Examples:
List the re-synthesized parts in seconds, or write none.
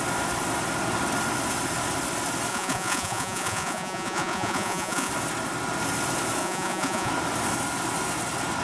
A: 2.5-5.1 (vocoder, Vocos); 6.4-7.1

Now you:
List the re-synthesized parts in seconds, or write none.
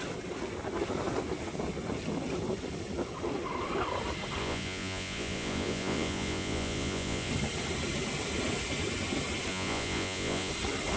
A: 4.4-7.3 (vocoder, Vocos); 9.5-10.5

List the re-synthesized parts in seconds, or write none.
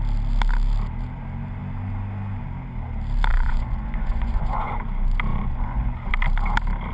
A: 3.3-4.7 (vocoder, Vocos); 5.3-6.1